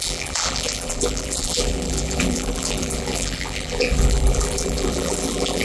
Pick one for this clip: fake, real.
fake